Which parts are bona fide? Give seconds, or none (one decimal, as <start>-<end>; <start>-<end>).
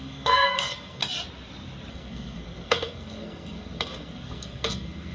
1.0-1.9